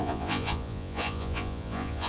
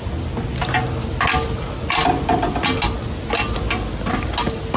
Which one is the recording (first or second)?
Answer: second